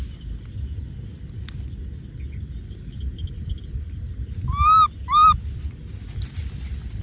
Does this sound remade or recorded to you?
recorded